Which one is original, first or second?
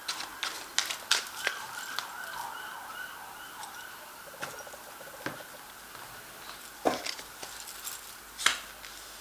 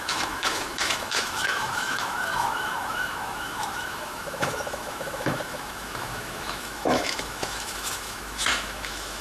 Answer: first